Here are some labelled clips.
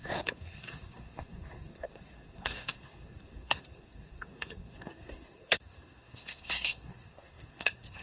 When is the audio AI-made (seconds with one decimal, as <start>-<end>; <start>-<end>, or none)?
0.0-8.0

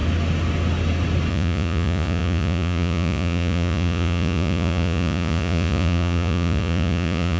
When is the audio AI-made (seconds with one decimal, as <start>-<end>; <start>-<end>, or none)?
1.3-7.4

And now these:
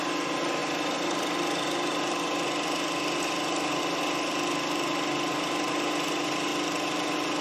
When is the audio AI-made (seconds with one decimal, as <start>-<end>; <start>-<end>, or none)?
none

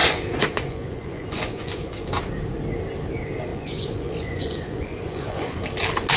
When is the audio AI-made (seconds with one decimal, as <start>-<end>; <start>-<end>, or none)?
0.0-2.1; 3.5-5.6

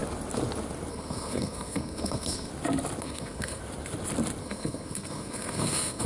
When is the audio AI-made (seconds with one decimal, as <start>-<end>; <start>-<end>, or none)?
0.9-2.5; 3.0-3.6; 4.4-6.1